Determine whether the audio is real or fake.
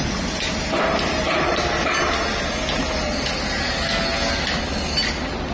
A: real